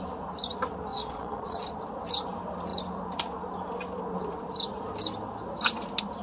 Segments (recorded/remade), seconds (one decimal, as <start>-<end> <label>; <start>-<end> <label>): 0.0-0.9 recorded; 0.9-1.6 remade; 1.6-6.2 recorded

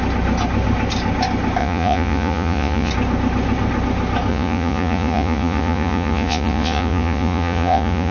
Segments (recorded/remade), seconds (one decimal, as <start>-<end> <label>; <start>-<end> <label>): 0.0-1.6 recorded; 1.6-2.9 remade; 2.9-4.3 recorded; 4.3-8.1 remade

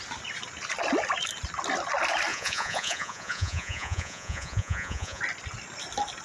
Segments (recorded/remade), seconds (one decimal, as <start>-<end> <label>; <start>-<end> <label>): 0.0-2.3 recorded; 2.3-5.2 remade; 5.2-6.2 recorded

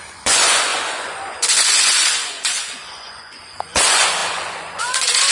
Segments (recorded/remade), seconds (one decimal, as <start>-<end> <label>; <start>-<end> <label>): 0.0-5.3 remade